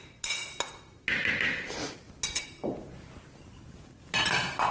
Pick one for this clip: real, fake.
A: real